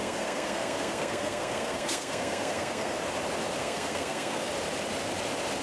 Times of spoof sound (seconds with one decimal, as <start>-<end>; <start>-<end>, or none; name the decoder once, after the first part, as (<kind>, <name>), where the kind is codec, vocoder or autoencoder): 0.0-3.0 (codec, SNAC); 3.6-4.5